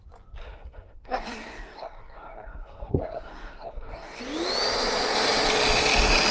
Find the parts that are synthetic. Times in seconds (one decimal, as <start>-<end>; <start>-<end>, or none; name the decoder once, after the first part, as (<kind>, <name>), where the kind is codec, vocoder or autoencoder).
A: 0.4-4.2 (codec, SNAC)